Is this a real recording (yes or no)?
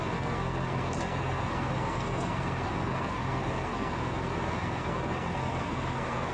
no